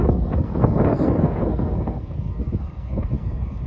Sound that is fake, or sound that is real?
fake